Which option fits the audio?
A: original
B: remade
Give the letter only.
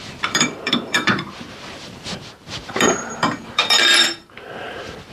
B